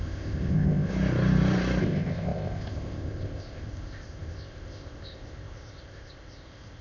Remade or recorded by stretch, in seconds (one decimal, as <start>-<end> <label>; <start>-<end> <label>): 0.0-0.9 remade; 0.9-1.8 recorded; 1.8-6.8 remade